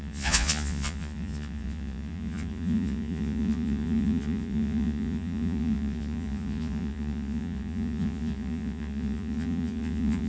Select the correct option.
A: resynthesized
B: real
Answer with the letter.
A